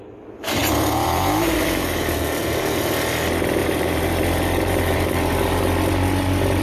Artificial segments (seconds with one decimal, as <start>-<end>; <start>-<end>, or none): 0.6-1.6; 3.6-5.6